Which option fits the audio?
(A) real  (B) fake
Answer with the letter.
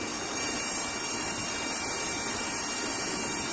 A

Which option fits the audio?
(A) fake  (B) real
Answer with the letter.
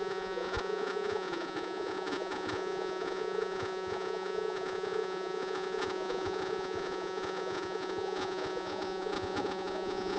A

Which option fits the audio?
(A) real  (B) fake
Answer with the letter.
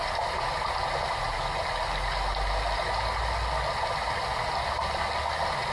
A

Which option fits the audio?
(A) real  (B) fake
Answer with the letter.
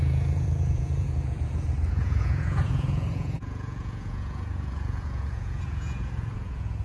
B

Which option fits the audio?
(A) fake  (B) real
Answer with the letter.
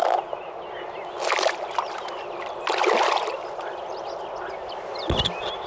B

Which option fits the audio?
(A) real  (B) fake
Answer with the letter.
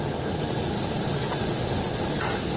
A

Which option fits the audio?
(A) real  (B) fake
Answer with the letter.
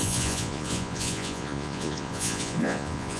B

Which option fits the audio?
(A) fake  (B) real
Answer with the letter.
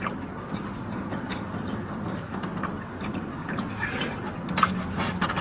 B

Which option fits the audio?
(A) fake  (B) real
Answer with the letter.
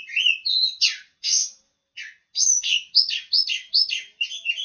B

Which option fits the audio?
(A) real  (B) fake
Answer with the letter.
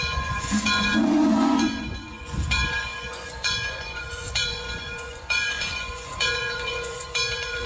B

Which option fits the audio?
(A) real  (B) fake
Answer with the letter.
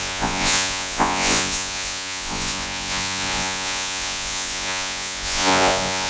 B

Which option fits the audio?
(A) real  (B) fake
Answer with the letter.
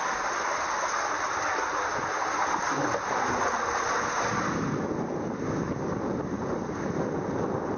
A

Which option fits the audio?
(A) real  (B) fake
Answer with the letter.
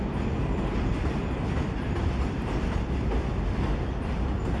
A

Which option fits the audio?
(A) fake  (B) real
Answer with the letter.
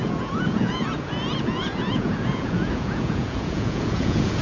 A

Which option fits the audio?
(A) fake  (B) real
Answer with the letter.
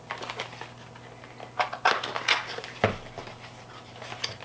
B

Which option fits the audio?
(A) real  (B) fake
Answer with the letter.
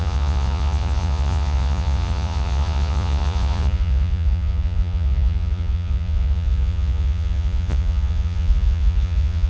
B